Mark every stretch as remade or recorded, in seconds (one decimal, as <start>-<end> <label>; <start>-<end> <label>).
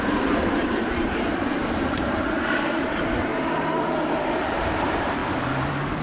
0.0-3.3 remade; 3.3-4.0 recorded; 4.0-6.0 remade